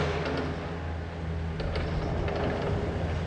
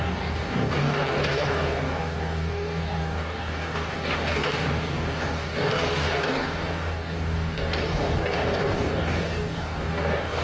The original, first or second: first